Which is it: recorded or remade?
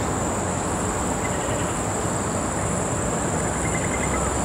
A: recorded